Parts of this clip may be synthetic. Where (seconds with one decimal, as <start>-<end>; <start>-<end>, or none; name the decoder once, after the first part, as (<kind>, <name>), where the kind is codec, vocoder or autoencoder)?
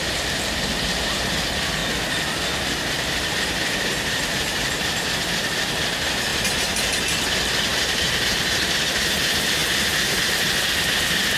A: 0.0-1.8 (vocoder, BigVGAN v2); 2.9-6.3; 7.4-11.4